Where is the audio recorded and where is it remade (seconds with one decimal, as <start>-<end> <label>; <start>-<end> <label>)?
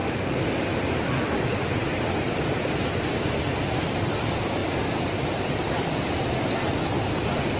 0.0-7.6 recorded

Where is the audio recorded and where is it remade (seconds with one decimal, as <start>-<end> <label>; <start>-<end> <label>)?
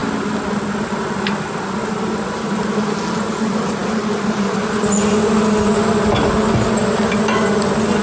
0.0-8.0 recorded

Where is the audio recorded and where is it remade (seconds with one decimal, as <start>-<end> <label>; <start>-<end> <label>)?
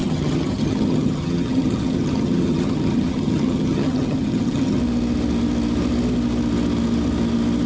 0.0-4.8 remade; 4.8-7.7 recorded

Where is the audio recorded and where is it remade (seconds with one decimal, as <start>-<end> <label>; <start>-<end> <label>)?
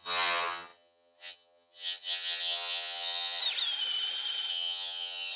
0.0-3.4 remade; 3.4-4.5 recorded; 4.5-5.4 remade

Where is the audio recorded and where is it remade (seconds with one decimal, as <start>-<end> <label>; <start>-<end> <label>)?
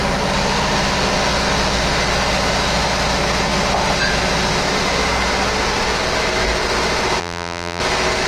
0.0-7.2 recorded; 7.2-7.8 remade; 7.8-8.3 recorded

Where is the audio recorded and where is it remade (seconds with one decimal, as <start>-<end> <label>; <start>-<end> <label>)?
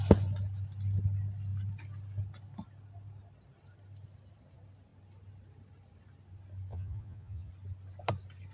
0.0-6.7 recorded; 6.7-7.5 remade; 7.5-8.5 recorded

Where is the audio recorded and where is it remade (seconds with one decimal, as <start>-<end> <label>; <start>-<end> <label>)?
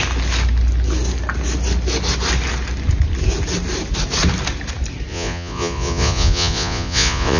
0.0-5.1 recorded; 5.1-7.4 remade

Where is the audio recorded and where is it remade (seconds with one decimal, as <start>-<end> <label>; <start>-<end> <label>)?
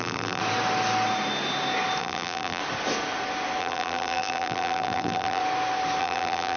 0.0-0.4 remade; 0.4-2.0 recorded; 2.0-2.6 remade; 2.6-3.6 recorded; 3.6-5.4 remade; 5.4-6.0 recorded; 6.0-6.6 remade